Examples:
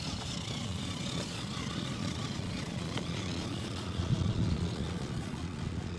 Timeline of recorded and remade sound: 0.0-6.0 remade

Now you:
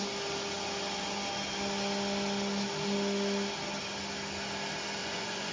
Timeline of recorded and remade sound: 0.0-5.0 recorded; 5.0-5.5 remade

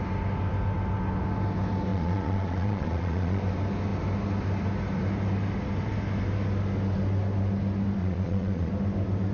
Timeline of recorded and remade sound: 0.0-1.9 recorded; 1.9-3.4 remade; 3.4-8.0 recorded; 8.0-8.7 remade; 8.7-9.3 recorded

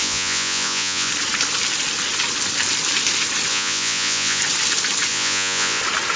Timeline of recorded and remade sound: 0.0-1.1 remade; 1.1-3.5 recorded; 3.5-4.4 remade; 4.4-5.1 recorded; 5.1-5.8 remade; 5.8-6.2 recorded

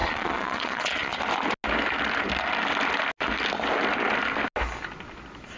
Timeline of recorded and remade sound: 0.0-1.2 remade; 1.2-5.6 recorded

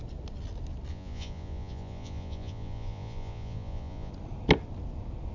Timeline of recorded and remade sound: 0.0-0.9 recorded; 0.9-4.1 remade; 4.1-5.3 recorded

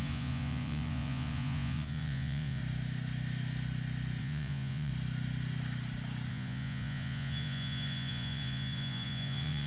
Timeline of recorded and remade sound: 0.0-2.6 remade; 2.6-4.2 recorded; 4.2-4.9 remade; 4.9-6.3 recorded; 6.3-9.7 remade